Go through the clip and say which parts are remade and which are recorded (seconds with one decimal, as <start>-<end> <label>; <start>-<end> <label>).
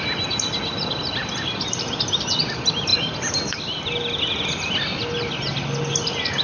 0.0-1.2 recorded; 1.2-2.4 remade; 2.4-2.9 recorded; 2.9-4.5 remade; 4.5-6.4 recorded